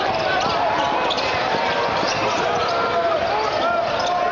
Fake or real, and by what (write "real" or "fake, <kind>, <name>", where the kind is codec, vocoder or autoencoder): real